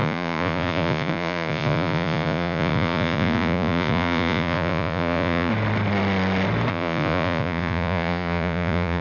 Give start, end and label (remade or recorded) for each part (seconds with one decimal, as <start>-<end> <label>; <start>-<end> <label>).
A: 0.0-5.5 remade; 5.5-6.7 recorded; 6.7-9.0 remade